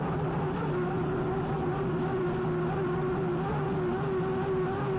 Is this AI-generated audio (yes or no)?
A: no